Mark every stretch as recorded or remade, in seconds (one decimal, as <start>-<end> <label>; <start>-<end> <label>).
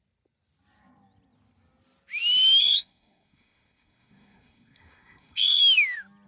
0.0-2.6 recorded; 2.6-5.6 remade; 5.6-6.3 recorded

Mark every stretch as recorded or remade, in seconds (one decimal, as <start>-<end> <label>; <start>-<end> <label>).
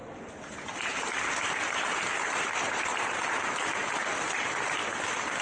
0.0-5.4 recorded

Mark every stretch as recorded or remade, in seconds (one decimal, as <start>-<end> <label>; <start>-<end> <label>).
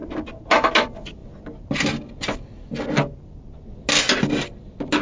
0.0-5.0 recorded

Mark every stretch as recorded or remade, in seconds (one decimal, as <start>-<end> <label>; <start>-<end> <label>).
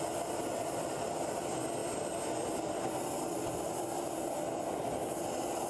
0.0-5.7 recorded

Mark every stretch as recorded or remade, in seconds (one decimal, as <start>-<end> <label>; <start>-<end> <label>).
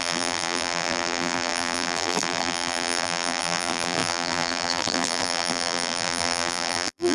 0.0-7.1 remade